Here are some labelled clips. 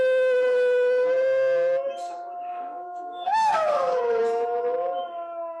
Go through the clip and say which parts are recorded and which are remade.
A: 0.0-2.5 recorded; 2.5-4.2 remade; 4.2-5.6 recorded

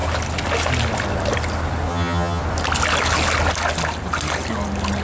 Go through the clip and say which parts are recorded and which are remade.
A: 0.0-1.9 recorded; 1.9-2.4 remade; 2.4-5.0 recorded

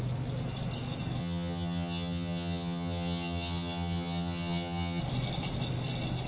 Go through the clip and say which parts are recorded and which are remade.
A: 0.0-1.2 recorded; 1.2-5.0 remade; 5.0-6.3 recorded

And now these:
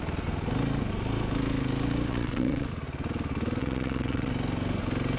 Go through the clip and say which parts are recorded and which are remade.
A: 0.0-2.1 recorded; 2.1-2.7 remade; 2.7-3.6 recorded; 3.6-4.3 remade; 4.3-5.2 recorded

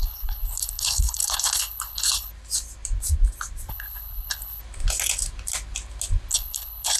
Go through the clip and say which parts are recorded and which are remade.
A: 0.0-2.3 remade; 2.3-3.7 recorded; 3.7-4.6 remade; 4.6-6.3 recorded; 6.3-7.0 remade

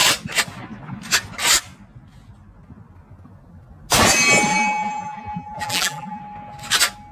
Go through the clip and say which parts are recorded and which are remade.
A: 0.0-4.5 recorded; 4.5-6.2 remade; 6.2-7.1 recorded